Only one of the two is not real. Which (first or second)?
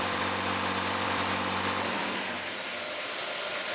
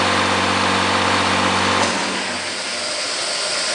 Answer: first